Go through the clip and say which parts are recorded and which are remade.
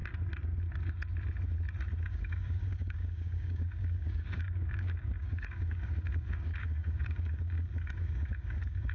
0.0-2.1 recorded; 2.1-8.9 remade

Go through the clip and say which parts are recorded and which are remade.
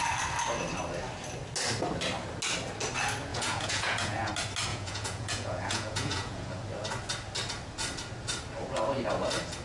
0.0-3.3 recorded; 3.3-4.3 remade; 4.3-4.7 recorded; 4.7-6.5 remade; 6.5-9.6 recorded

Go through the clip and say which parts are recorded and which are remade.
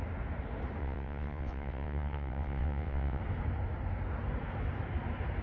0.0-0.8 recorded; 0.8-3.2 remade; 3.2-5.4 recorded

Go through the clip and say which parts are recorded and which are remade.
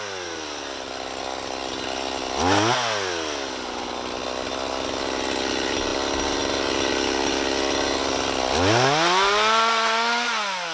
0.0-10.7 recorded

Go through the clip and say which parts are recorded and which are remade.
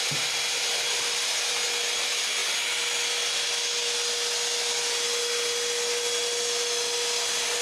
0.0-7.6 recorded